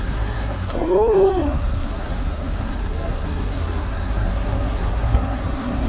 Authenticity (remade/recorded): remade